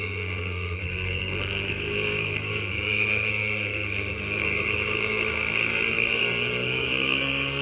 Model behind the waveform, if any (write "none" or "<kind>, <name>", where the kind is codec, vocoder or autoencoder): codec, SNAC